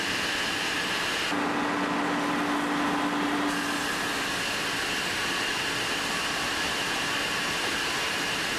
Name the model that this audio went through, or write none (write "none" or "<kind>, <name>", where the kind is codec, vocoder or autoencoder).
none